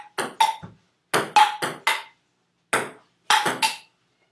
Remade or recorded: recorded